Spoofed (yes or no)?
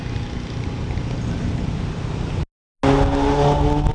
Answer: no